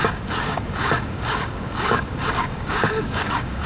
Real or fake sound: fake